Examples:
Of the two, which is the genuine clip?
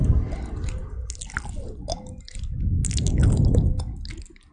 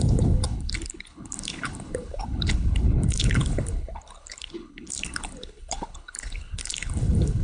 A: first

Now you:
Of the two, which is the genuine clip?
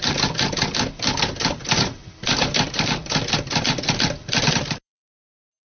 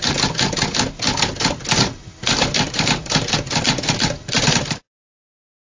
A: second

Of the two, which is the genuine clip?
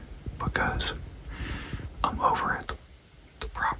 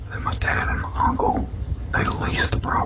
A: first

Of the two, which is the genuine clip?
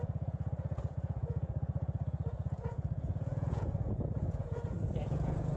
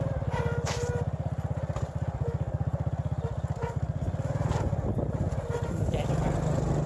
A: second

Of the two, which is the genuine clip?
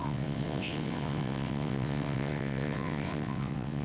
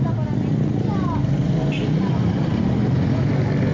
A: second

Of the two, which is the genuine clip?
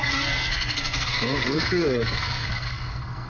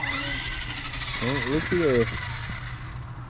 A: second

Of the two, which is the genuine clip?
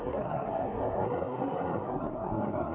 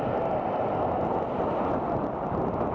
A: second